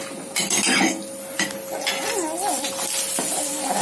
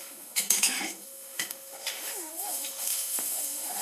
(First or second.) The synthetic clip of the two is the second